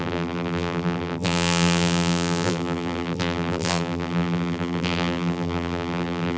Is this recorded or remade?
remade